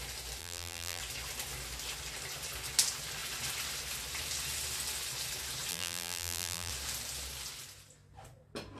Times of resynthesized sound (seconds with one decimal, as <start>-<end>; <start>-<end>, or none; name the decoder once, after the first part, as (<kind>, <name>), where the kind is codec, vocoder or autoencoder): 0.4-1.0 (vocoder, BigVGAN v2); 5.7-6.7